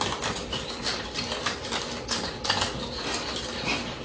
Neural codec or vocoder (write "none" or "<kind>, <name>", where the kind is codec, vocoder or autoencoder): none